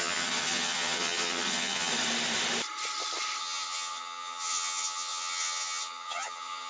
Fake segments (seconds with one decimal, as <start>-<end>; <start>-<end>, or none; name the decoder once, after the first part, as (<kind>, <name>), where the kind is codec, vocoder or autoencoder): 0.0-1.9 (vocoder, HiFi-GAN); 3.4-6.7